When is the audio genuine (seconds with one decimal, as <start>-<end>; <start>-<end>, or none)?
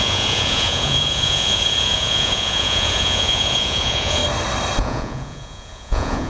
4.2-4.8